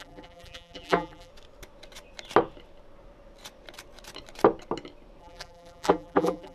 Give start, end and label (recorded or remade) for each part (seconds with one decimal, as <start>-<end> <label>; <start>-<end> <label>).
0.0-1.3 remade; 1.3-5.2 recorded; 5.2-6.5 remade